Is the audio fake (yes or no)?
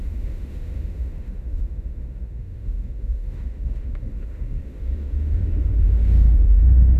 yes